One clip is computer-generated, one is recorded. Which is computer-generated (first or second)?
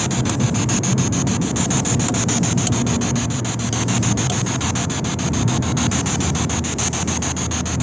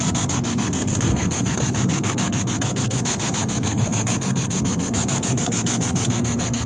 second